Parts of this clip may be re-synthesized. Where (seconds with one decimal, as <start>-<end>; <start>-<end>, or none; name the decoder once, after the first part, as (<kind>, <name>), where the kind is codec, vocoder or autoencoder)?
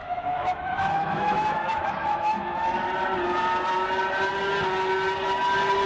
0.0-2.8 (autoencoder, DAC-VAE)